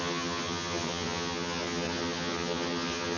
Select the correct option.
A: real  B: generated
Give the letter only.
B